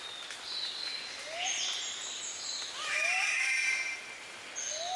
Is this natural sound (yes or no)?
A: yes